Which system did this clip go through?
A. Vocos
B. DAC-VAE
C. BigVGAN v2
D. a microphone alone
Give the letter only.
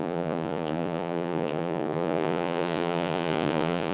A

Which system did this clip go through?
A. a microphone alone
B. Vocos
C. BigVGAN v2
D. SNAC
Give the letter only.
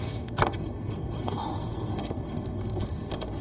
D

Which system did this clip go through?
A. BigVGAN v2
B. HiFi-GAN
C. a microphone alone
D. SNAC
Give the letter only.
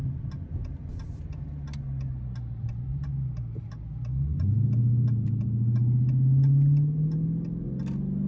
C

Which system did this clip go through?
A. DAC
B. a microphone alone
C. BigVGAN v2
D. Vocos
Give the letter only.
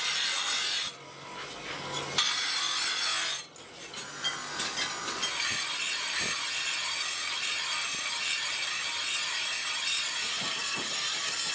B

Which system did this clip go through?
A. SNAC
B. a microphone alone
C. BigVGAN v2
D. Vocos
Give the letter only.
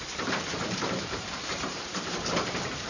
C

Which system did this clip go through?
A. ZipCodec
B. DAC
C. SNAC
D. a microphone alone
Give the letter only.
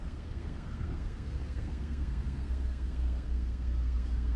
C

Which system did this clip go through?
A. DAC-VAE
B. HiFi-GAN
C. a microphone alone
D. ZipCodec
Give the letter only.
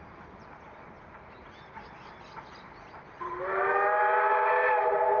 C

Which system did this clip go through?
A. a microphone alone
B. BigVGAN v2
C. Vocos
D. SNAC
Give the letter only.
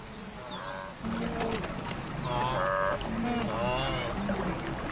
A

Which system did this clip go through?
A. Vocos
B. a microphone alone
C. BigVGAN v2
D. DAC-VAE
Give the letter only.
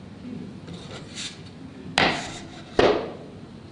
B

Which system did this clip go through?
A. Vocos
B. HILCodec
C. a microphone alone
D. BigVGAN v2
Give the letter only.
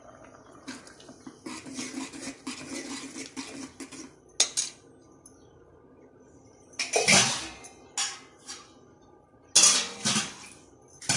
C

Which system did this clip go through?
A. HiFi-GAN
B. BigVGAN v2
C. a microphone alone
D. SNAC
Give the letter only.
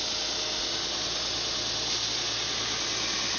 C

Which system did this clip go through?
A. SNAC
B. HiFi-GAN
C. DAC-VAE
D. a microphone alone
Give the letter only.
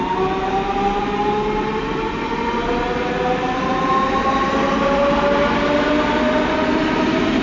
D